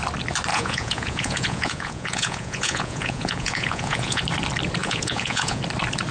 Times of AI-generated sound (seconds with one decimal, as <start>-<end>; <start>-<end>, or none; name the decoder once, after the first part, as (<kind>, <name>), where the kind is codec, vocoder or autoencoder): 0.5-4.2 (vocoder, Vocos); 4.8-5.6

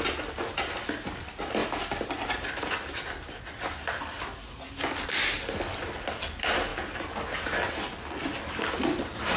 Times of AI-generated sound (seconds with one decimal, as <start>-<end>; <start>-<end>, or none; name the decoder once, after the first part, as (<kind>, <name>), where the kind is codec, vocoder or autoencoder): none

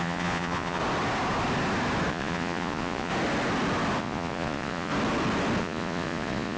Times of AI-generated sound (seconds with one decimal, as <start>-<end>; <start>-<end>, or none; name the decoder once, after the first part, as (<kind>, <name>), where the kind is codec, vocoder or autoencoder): 0.0-0.8 (vocoder, Vocos); 2.1-3.1; 4.0-4.9; 5.6-6.6

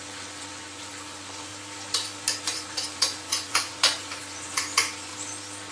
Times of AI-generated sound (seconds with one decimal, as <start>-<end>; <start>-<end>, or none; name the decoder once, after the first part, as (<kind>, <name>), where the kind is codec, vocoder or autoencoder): 0.0-1.5 (vocoder, Vocos); 2.4-5.1

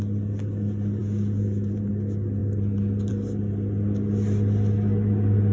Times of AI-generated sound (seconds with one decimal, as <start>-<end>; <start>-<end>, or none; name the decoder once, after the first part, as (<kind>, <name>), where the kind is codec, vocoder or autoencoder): 1.0-1.9 (vocoder, Vocos)

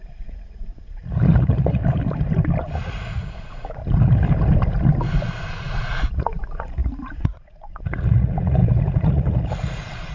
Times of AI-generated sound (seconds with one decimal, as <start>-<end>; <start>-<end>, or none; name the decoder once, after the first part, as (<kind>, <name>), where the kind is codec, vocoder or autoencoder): 0.0-1.8 (vocoder, Vocos); 2.8-3.8; 5.7-10.1